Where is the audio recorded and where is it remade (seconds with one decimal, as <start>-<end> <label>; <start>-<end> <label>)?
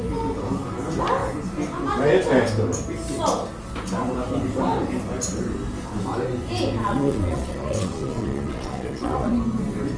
0.0-6.8 recorded; 6.8-9.3 remade; 9.3-10.0 recorded